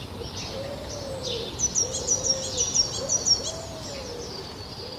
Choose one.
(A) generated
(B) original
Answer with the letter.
B